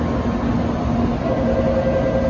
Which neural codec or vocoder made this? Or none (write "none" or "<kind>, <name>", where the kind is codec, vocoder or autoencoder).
none